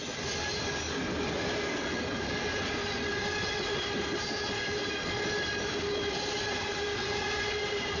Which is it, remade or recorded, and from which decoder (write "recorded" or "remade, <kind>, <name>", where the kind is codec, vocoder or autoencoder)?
recorded